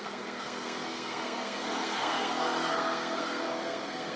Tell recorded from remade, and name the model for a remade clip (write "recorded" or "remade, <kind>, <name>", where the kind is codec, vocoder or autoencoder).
remade, codec, SNAC